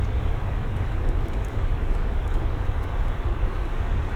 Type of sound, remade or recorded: remade